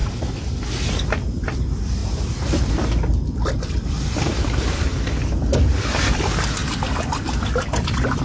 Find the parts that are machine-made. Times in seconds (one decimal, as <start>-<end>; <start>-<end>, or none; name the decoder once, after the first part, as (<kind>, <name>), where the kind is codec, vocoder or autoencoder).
1.4-6.6 (vocoder, BigVGAN v2)